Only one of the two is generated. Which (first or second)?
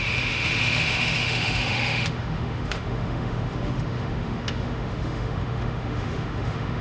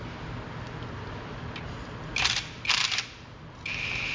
first